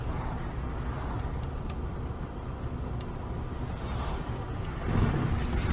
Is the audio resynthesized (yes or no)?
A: no